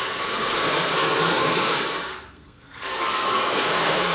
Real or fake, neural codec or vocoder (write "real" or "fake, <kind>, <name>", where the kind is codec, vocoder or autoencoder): fake, codec, SNAC